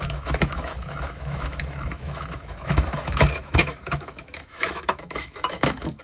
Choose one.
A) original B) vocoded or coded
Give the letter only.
B